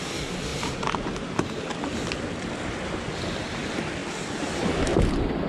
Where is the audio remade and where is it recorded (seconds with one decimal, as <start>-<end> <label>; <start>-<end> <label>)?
0.0-0.5 recorded; 0.5-1.7 remade; 1.7-5.5 recorded